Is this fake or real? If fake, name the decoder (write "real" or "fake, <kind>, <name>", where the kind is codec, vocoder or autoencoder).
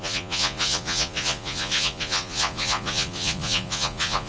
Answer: fake, vocoder, Vocos